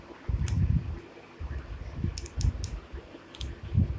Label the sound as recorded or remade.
recorded